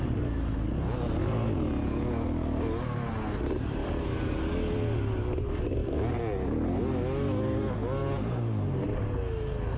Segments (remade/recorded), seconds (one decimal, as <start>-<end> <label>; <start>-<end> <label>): 0.0-3.8 recorded; 3.8-4.5 remade; 4.5-9.8 recorded